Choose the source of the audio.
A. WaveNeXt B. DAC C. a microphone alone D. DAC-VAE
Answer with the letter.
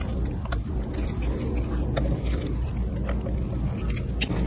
C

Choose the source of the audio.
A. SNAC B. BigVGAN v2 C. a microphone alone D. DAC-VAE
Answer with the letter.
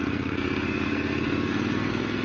A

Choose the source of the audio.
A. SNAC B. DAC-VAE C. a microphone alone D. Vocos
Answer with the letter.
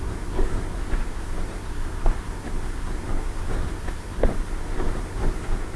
A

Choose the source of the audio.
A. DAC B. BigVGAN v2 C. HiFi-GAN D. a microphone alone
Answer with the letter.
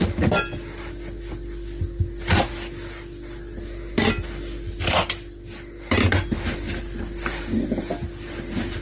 D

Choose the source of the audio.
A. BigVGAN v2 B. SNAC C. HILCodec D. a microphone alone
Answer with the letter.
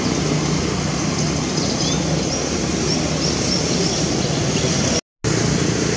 D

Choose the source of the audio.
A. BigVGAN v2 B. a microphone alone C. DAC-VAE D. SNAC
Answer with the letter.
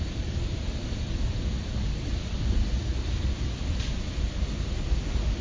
B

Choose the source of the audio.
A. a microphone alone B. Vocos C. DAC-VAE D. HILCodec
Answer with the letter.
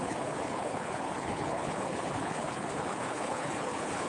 D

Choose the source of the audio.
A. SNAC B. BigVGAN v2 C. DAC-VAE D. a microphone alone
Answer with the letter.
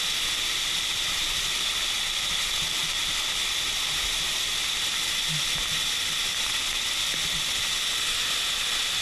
D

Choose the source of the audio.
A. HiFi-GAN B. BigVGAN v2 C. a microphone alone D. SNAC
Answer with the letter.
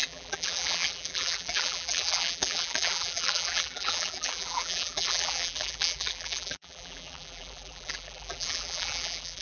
B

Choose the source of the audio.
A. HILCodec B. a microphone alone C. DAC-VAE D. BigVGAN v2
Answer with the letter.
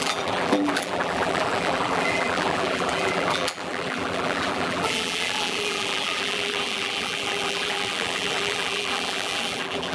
D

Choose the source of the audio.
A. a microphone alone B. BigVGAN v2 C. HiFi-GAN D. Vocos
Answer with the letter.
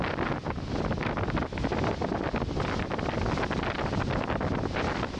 A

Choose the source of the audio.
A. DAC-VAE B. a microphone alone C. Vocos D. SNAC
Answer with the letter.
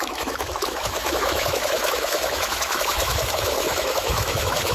A